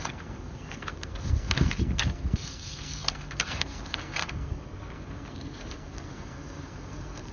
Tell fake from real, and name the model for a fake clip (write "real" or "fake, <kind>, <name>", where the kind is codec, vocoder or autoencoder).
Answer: fake, codec, SNAC